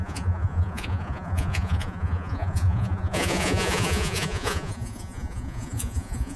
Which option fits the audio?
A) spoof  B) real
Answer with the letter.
A